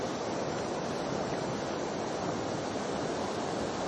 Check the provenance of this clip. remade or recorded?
recorded